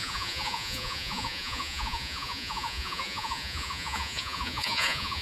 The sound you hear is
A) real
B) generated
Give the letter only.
B